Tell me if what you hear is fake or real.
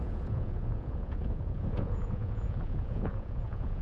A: fake